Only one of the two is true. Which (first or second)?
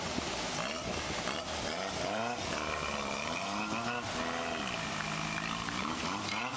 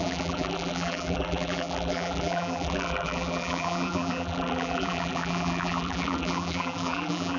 first